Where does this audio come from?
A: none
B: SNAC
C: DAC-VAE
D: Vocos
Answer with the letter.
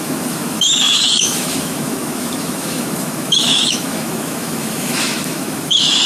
C